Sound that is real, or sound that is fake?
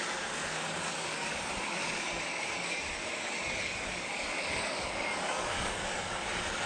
fake